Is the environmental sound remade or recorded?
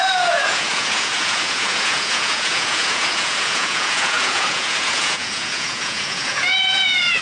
remade